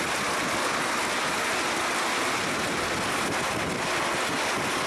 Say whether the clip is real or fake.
real